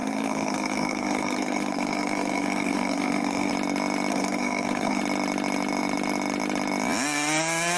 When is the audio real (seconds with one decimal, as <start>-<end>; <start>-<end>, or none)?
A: 3.5-4.1; 5.0-7.8